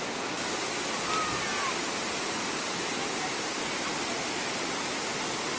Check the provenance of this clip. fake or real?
real